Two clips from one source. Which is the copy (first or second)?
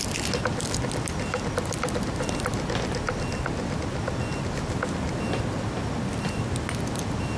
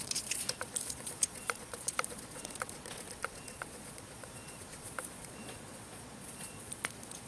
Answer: second